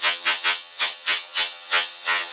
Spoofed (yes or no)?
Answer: yes